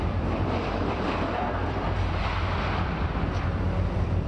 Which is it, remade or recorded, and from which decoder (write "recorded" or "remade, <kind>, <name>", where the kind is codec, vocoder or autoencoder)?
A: remade, vocoder, BigVGAN v2